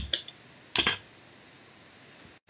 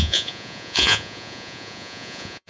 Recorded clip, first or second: first